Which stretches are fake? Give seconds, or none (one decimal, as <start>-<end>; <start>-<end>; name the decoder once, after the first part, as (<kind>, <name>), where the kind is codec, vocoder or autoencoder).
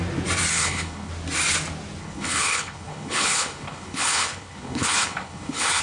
0.5-1.1 (codec, HILCodec); 2.0-5.8